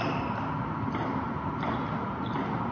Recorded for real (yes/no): yes